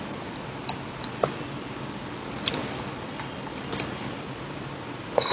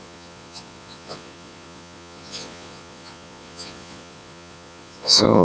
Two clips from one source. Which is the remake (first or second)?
second